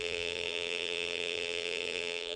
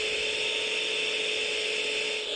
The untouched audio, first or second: second